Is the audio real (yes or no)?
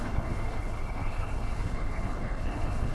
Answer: no